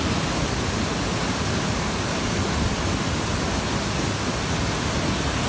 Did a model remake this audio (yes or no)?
no